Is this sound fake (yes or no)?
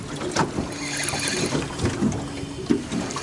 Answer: no